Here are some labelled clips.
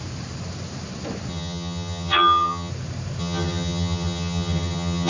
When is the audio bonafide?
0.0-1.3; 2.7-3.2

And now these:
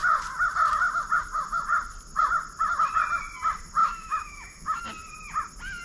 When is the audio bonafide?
0.0-3.8; 4.8-5.8